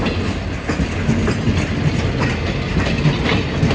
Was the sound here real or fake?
real